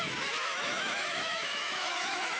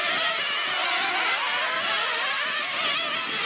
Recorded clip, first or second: second